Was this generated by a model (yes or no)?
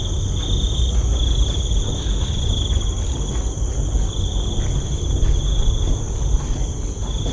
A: no